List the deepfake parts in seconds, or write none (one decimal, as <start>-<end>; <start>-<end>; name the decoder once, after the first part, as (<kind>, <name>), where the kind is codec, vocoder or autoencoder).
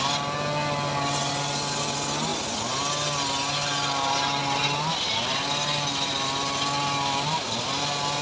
none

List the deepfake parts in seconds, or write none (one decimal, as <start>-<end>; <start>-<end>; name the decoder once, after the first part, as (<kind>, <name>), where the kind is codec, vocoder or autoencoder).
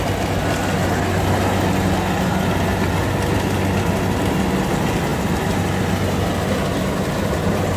none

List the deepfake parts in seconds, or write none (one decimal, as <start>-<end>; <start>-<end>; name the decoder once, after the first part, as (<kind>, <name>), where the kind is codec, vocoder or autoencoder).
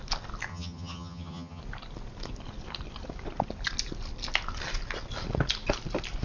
0.5-1.6 (vocoder, HiFi-GAN)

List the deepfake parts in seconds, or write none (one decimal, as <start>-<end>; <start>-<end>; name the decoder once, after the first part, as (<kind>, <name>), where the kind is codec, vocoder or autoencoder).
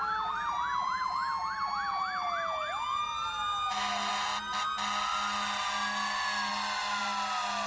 none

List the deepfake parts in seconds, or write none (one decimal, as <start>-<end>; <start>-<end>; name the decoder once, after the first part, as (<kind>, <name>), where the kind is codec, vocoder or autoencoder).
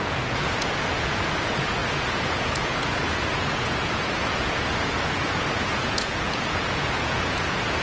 0.0-7.8 (vocoder, Vocos)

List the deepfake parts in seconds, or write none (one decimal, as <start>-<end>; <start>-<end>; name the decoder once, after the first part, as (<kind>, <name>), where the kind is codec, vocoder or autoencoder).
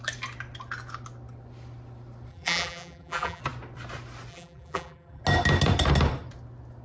2.3-3.4 (vocoder, BigVGAN v2); 4.3-5.2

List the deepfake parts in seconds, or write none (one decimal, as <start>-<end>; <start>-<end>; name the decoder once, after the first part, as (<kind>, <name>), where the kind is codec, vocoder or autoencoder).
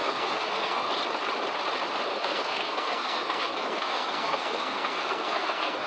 0.0-0.9 (codec, SNAC); 2.1-5.9